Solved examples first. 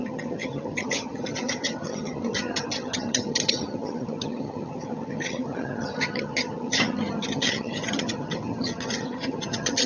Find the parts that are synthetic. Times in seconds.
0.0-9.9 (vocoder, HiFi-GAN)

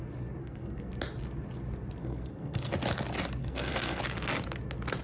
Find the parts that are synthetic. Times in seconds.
0.4-0.9 (codec, SNAC); 2.0-2.7; 3.4-4.0

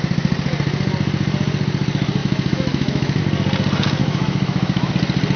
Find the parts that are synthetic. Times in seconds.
2.2-3.2 (autoencoder, DAC-VAE); 4.0-4.9

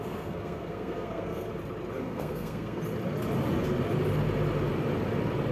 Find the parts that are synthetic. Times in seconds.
0.0-1.5 (codec, SNAC); 2.0-2.8

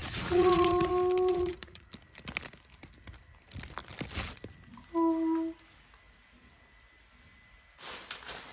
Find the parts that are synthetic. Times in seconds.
0.0-0.9 (vocoder, Vocos); 1.3-1.9

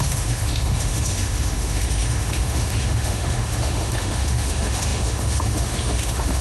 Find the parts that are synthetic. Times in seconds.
0.0-6.4 (autoencoder, DAC-VAE)

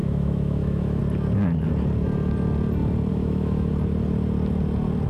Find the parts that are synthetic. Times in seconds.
0.0-1.0 (autoencoder, DAC-VAE); 3.1-3.7